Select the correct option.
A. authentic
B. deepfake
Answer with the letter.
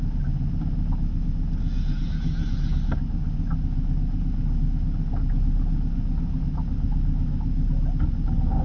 A